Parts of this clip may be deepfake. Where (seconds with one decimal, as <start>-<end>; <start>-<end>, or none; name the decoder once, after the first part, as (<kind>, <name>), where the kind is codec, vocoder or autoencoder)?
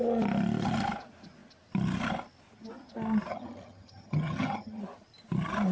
3.3-4.8 (vocoder, HiFi-GAN)